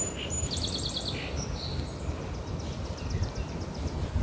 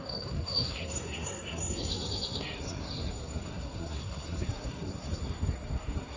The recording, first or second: first